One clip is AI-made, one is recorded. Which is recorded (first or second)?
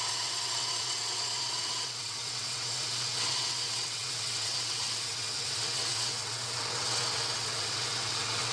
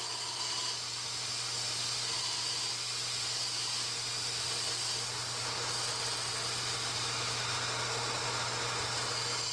second